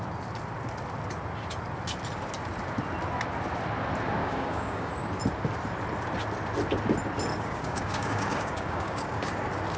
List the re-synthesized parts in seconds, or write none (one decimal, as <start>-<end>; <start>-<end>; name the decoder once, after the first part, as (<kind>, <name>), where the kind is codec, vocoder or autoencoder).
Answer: 4.2-4.9 (codec, DAC); 7.3-9.3